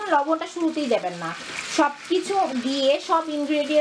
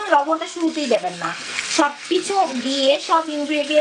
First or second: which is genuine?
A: first